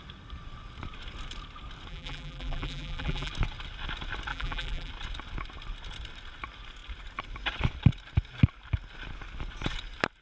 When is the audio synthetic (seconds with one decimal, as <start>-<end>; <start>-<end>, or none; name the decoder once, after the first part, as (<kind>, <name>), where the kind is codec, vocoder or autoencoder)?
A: 1.9-3.3 (vocoder, BigVGAN v2); 4.3-4.9